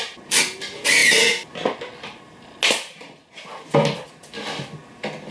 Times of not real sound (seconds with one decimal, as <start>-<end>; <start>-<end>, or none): none